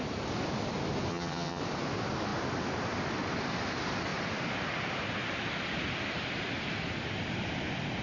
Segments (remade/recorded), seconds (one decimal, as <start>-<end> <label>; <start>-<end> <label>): 0.0-1.1 recorded; 1.1-1.6 remade; 1.6-8.0 recorded